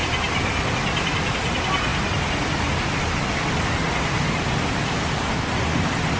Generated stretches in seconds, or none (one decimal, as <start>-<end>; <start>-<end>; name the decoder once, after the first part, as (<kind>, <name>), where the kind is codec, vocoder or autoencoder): none